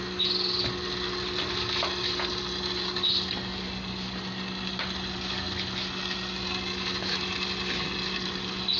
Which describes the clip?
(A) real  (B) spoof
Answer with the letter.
A